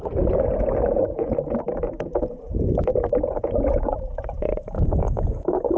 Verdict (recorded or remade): remade